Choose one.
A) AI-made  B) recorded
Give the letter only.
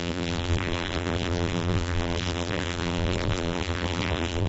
A